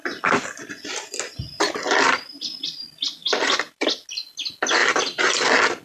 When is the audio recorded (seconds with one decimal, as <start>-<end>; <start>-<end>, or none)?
0.0-3.2; 3.9-4.8; 5.3-5.8